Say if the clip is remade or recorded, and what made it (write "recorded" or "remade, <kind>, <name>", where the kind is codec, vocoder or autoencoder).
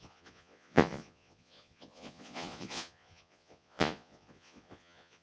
remade, vocoder, Vocos